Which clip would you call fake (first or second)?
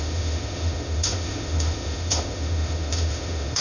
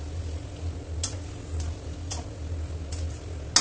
first